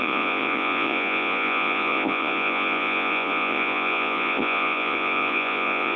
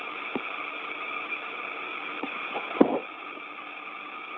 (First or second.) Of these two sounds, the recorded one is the second